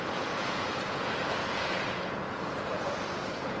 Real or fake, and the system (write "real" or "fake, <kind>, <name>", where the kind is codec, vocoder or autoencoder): fake, vocoder, Vocos